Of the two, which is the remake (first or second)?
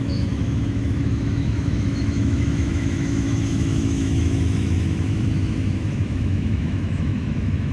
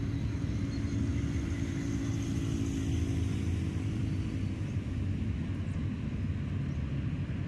first